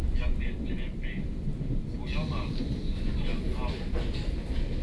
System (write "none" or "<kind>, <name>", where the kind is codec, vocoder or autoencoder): none